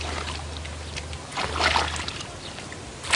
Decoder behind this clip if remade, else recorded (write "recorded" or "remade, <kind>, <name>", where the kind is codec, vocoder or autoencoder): recorded